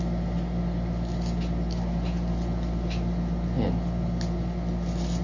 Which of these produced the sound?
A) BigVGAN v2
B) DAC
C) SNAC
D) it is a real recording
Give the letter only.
D